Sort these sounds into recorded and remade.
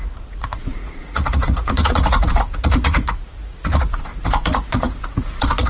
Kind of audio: remade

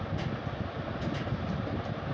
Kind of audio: recorded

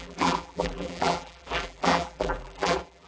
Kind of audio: remade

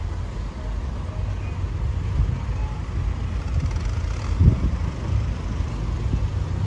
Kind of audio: recorded